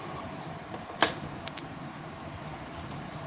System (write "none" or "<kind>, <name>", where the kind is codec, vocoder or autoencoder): vocoder, BigVGAN v2